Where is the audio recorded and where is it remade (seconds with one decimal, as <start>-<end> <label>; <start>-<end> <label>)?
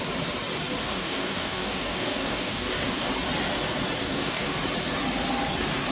0.0-0.8 recorded; 0.8-3.1 remade; 3.1-4.0 recorded; 4.0-4.6 remade; 4.6-5.9 recorded